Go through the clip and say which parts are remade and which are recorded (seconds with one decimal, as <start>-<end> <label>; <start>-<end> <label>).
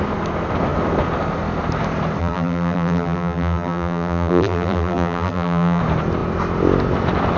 0.0-2.2 recorded; 2.2-5.8 remade; 5.8-7.4 recorded